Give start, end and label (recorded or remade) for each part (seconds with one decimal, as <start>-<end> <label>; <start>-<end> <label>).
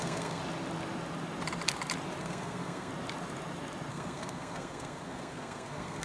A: 0.0-0.4 remade; 0.4-2.2 recorded; 2.2-2.9 remade; 2.9-3.9 recorded; 3.9-6.0 remade